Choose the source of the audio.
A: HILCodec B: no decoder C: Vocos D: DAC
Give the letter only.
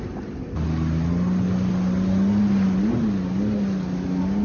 B